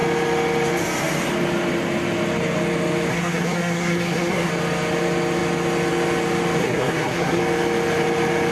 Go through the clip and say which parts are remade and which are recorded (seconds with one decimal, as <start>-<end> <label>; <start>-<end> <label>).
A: 0.0-3.1 recorded; 3.1-4.5 remade; 4.5-6.6 recorded; 6.6-7.4 remade; 7.4-8.5 recorded